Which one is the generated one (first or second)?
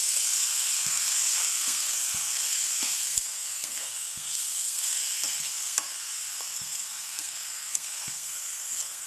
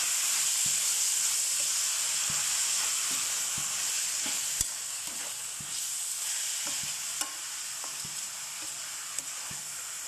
first